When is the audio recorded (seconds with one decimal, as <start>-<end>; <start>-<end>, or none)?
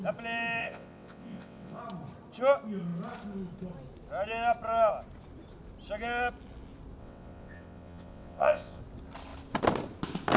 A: 0.0-0.6; 1.8-7.0; 8.8-10.4